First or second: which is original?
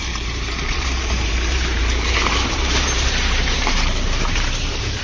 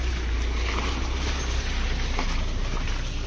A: second